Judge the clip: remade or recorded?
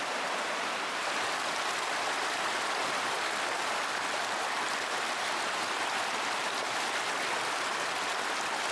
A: recorded